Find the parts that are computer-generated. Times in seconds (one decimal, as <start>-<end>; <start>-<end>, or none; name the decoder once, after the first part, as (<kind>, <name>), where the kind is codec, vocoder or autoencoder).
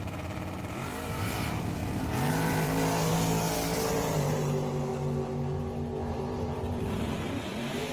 0.0-1.8 (vocoder, BigVGAN v2); 2.3-3.1; 3.9-4.9; 6.1-7.9